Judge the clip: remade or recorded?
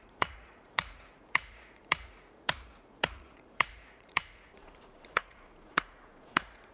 remade